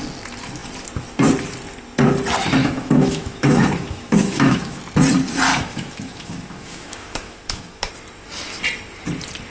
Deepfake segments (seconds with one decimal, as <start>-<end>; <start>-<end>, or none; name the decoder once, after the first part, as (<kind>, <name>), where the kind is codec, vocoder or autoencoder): 2.6-4.8 (autoencoder, DAC-VAE); 5.5-7.9